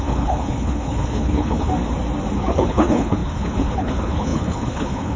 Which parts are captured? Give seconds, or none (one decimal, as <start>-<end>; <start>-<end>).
1.7-2.4